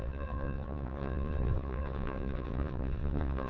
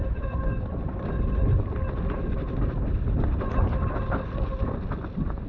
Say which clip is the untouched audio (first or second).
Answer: second